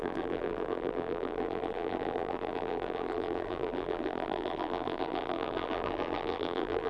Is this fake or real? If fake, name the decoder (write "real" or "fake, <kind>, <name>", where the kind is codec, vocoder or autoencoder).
fake, vocoder, BigVGAN v2